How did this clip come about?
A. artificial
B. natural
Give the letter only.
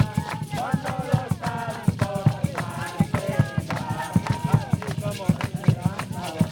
B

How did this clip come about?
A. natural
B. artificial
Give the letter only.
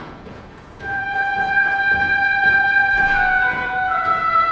B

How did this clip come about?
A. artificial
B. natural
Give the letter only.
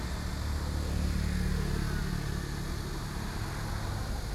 B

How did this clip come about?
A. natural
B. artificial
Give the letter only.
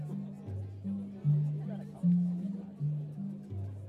A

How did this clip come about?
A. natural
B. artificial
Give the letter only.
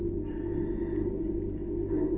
A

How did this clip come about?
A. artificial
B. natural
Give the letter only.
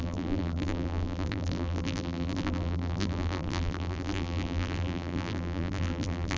A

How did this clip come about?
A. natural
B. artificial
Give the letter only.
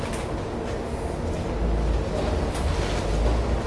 A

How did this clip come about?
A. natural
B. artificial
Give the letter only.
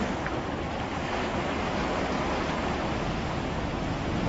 A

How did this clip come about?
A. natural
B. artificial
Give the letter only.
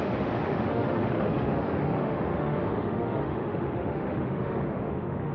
B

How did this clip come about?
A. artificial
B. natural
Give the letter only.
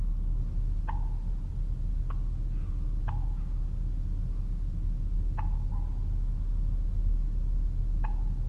B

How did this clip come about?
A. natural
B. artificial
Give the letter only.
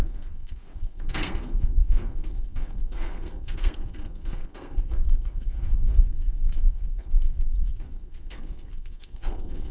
B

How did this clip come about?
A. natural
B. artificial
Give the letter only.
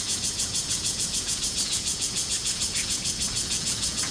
B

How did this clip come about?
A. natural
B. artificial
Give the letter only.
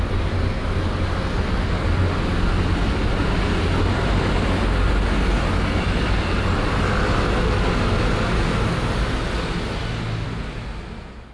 A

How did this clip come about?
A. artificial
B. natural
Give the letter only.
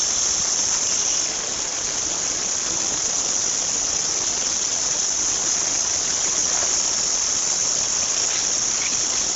B